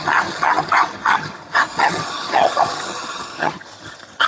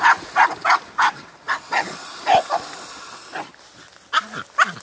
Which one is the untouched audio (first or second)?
second